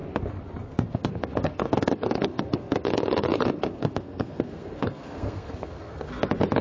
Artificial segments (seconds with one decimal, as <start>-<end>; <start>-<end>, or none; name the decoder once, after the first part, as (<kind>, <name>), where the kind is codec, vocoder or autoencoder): 0.6-6.1 (codec, SNAC)

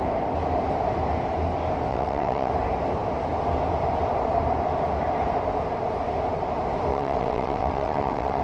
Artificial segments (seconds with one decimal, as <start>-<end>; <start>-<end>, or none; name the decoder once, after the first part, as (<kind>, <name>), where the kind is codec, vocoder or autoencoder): 1.9-2.5 (vocoder, WaveNeXt); 6.9-8.4

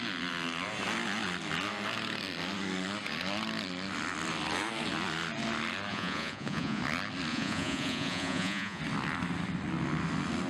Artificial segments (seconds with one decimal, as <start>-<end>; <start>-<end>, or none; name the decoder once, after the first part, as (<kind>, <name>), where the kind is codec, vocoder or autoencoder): 5.9-6.8 (vocoder, Vocos); 7.3-8.8

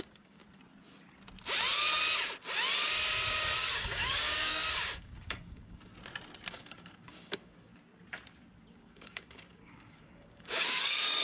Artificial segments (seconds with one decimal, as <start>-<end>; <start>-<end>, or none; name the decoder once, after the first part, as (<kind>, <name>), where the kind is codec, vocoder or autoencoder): 0.0-0.4 (codec, DAC); 3.6-5.9; 6.5-7.7; 8.7-11.2

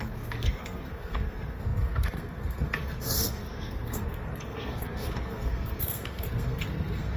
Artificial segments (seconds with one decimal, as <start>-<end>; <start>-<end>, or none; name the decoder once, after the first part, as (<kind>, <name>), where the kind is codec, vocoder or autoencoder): 0.0-7.2 (codec, SNAC)

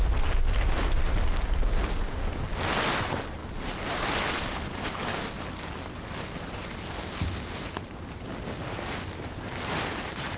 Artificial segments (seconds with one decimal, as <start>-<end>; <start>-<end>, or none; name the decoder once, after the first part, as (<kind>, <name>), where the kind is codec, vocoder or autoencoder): none

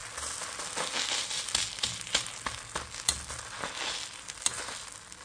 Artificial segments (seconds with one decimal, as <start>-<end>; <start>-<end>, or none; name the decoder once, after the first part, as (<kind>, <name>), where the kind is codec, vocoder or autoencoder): none